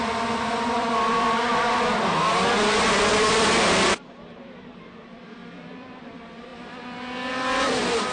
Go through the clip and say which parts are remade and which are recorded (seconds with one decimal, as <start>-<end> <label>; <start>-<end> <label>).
0.0-1.5 remade; 1.5-3.1 recorded; 3.1-6.5 remade; 6.5-7.3 recorded; 7.3-8.1 remade